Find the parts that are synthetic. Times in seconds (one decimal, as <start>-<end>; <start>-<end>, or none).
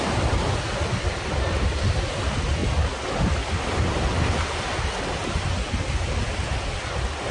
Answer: none